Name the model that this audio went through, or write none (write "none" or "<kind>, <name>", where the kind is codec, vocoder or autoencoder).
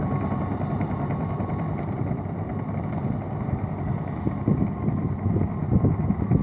none